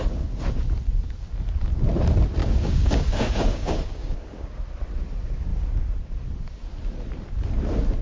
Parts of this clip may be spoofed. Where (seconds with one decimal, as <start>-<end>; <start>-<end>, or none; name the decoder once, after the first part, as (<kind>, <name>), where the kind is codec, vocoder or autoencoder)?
2.4-4.6 (codec, DAC)